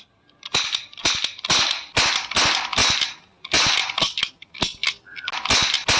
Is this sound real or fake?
real